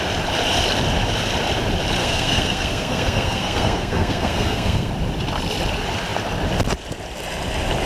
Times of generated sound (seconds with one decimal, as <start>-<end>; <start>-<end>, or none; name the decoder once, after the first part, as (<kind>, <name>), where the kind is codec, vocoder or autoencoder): 2.0-4.9 (codec, SNAC)